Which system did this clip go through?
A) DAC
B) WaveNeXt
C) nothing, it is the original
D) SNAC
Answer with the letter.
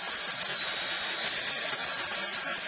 C